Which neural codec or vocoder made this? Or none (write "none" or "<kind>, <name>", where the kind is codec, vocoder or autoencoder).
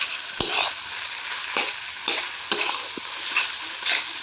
none